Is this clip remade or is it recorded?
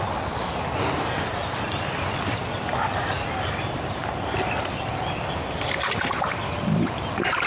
recorded